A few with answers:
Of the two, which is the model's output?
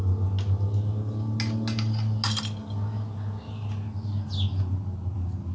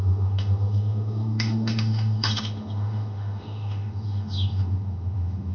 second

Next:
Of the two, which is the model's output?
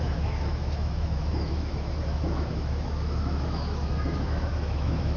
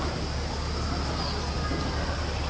first